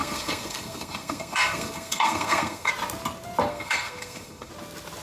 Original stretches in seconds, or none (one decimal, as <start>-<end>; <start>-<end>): 2.7-3.5; 4.5-5.0